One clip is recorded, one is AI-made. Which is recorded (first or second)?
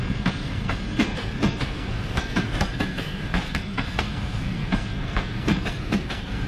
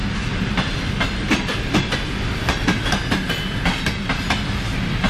second